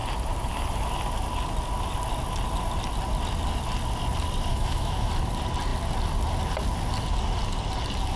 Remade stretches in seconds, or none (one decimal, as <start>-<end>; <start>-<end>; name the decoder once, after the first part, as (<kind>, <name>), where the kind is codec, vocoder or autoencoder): 4.5-5.1 (autoencoder, DAC-VAE)